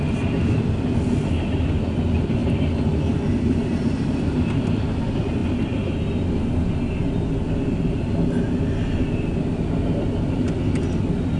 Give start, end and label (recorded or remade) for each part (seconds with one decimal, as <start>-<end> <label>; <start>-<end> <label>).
0.0-11.4 recorded